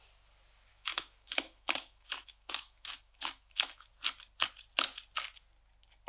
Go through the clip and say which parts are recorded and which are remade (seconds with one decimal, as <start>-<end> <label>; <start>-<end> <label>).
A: 0.0-0.7 recorded; 0.7-3.9 remade; 3.9-6.1 recorded